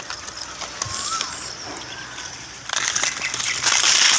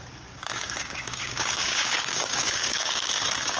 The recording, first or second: first